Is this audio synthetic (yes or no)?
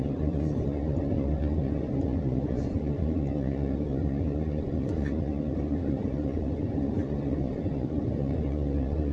yes